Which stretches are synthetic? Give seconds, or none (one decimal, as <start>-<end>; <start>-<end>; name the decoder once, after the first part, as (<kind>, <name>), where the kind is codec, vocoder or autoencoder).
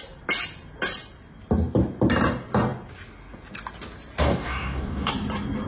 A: 4.2-5.1 (codec, DAC)